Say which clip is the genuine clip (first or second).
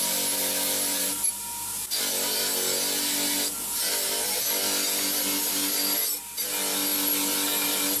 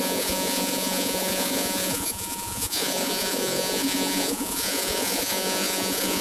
first